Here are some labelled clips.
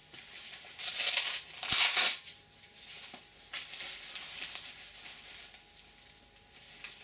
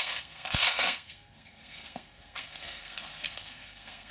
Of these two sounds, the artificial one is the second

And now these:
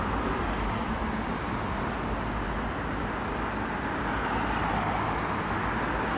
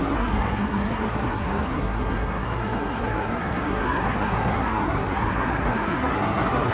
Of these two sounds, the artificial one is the second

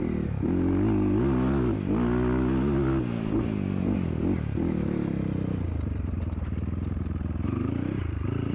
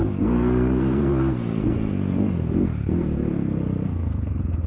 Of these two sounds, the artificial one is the second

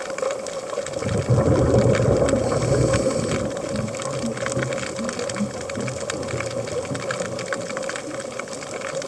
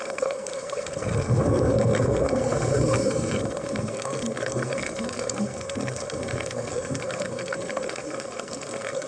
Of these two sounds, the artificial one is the second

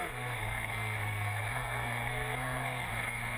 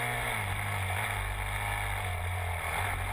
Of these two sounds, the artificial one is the first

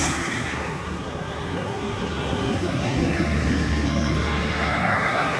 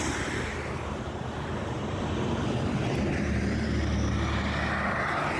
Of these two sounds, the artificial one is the first